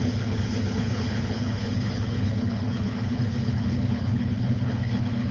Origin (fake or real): fake